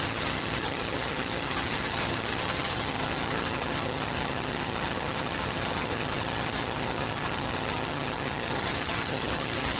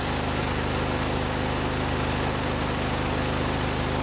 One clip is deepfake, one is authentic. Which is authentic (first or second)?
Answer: second